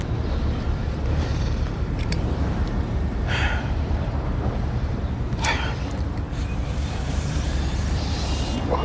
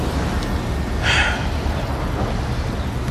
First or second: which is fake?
first